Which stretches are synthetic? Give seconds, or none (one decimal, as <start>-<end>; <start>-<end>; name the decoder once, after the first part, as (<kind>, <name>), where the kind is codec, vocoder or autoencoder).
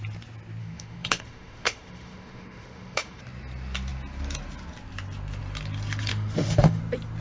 0.6-3.2 (autoencoder, DAC-VAE); 6.1-6.8